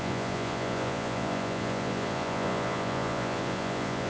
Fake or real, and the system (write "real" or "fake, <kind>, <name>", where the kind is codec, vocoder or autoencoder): fake, vocoder, Vocos